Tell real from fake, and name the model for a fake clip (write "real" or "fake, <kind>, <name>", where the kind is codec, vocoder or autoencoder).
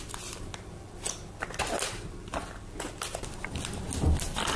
real